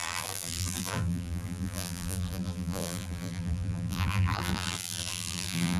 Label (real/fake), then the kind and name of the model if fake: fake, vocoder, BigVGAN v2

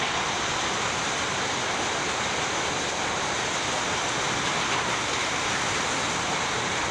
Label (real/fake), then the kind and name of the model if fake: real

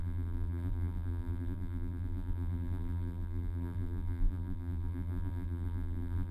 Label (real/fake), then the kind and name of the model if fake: fake, vocoder, BigVGAN v2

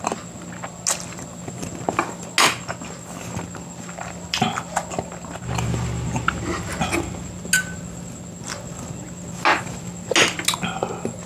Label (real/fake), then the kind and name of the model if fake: real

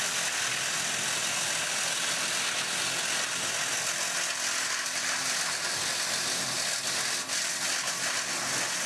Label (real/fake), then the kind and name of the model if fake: real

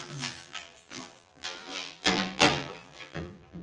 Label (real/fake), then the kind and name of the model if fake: fake, vocoder, BigVGAN v2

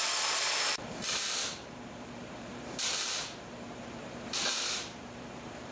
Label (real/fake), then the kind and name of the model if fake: fake, vocoder, BigVGAN v2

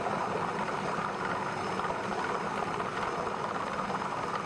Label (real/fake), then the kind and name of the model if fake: real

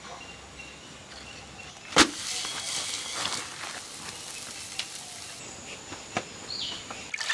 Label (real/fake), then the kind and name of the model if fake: real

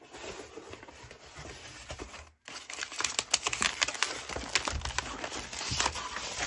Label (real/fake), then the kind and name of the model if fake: real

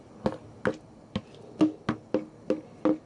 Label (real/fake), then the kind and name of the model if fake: real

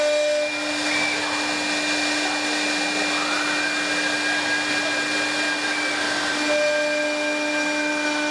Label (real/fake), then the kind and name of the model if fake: real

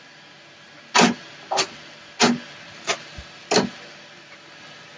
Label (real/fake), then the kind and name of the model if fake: real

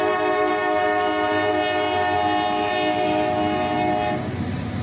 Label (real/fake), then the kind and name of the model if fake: real